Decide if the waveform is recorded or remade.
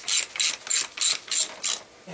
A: recorded